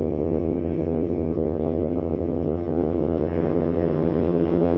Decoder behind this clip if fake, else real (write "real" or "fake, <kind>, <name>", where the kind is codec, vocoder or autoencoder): fake, vocoder, HiFi-GAN